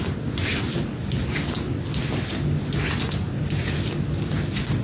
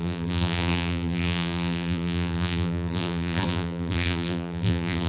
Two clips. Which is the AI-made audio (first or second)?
second